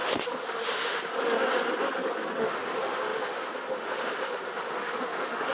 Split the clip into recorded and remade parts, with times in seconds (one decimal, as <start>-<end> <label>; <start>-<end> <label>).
0.0-1.1 remade; 1.1-2.4 recorded; 2.4-5.5 remade